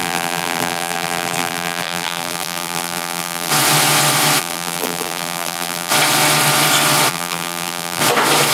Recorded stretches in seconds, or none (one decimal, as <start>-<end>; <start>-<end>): 3.5-4.4; 5.9-7.1; 8.0-8.5